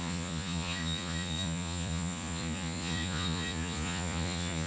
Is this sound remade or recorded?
remade